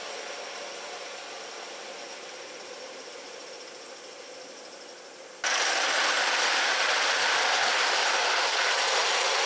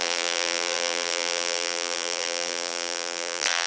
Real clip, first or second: first